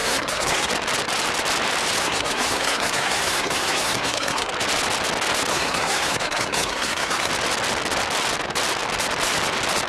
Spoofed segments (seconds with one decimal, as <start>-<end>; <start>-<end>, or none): 0.0-0.7; 2.0-4.5; 5.5-7.3

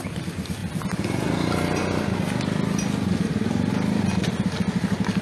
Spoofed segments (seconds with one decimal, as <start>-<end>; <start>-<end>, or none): none

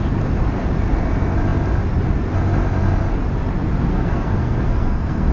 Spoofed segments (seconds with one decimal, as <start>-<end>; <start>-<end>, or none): 3.9-5.3

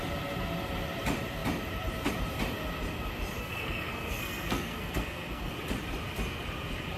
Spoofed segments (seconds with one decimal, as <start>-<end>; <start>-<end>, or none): 3.4-5.5

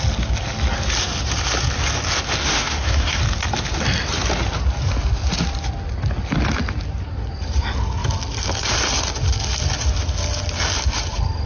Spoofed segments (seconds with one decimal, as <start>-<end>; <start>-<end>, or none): 2.4-3.2

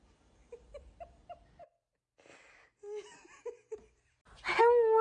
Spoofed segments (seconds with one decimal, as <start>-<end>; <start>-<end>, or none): none